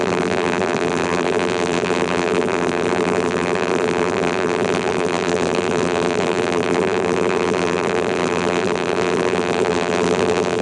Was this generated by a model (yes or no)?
yes